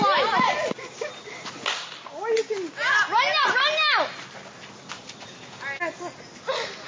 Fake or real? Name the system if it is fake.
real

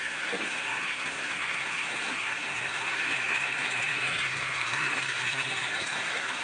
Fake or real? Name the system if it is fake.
fake, codec, SNAC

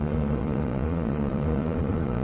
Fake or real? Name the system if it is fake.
fake, vocoder, Vocos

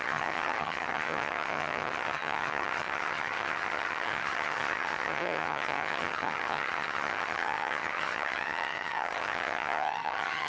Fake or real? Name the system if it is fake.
fake, vocoder, HiFi-GAN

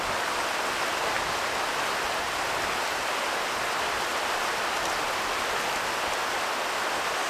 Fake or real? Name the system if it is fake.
real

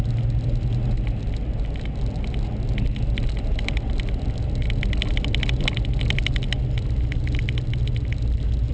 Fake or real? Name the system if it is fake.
real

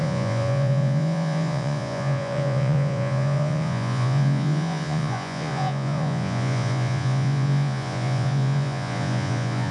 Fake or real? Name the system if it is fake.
fake, vocoder, Vocos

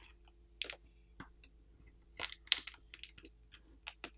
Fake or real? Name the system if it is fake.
real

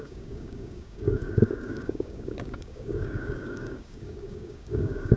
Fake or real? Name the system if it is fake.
fake, codec, DAC